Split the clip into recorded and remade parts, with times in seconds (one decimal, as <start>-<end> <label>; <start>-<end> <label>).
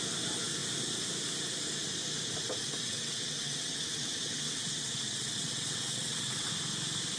0.0-2.6 recorded; 2.6-6.5 remade; 6.5-7.2 recorded